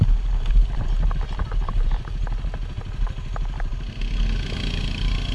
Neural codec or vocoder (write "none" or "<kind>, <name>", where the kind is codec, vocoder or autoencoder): none